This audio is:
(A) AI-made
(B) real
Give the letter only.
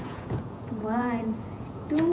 A